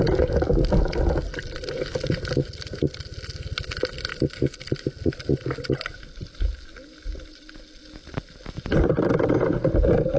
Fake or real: real